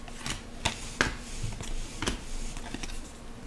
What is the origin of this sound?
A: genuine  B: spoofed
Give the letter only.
A